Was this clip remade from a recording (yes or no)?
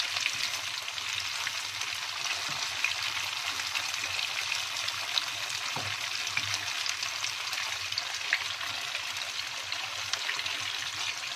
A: no